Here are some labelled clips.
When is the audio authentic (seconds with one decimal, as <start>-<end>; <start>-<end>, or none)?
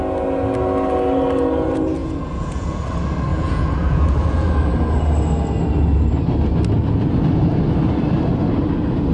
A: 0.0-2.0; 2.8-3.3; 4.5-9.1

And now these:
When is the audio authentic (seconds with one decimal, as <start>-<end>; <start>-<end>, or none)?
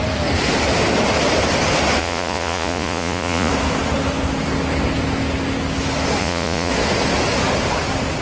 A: 0.0-2.0; 3.5-6.2; 6.7-8.2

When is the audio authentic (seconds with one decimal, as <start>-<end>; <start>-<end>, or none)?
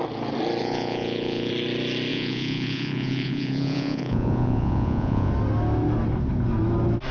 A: 0.0-0.6; 1.5-2.1; 5.3-7.1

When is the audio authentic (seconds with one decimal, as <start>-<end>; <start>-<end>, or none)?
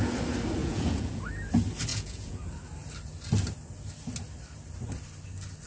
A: 0.0-0.6; 1.2-1.9; 2.4-5.7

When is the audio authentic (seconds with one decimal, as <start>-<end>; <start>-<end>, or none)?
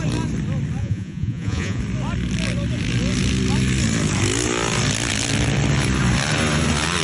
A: 0.0-0.8; 1.8-7.0